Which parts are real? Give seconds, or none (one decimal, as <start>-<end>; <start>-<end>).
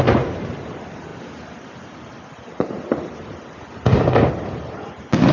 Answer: 0.0-5.3